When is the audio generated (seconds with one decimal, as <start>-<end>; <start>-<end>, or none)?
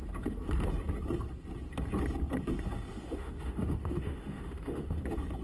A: 2.9-5.0